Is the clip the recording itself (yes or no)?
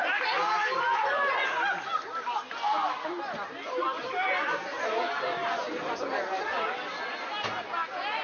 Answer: yes